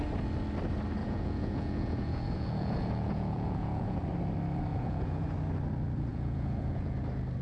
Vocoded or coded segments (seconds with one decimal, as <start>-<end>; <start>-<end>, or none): 1.0-4.0; 4.7-5.3; 6.1-7.0